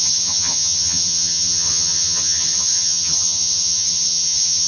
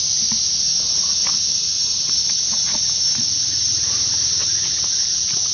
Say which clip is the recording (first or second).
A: second